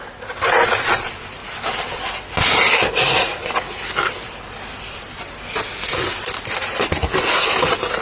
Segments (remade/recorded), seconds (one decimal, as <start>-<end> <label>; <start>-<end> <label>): 0.0-3.3 recorded; 3.3-5.0 remade; 5.0-8.0 recorded